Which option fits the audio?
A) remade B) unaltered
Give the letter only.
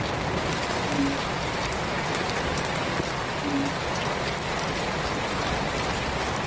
B